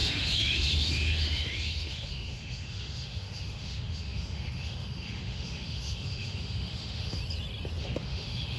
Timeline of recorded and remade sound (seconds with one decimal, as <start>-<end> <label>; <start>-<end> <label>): 0.0-7.2 remade; 7.2-7.8 recorded; 7.8-8.6 remade